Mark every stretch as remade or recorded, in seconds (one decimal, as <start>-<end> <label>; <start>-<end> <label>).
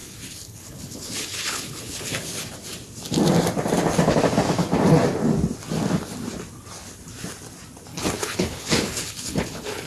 0.0-2.4 remade; 2.4-7.9 recorded; 7.9-9.9 remade